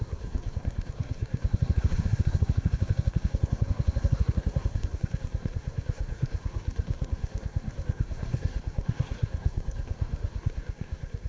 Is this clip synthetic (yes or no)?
yes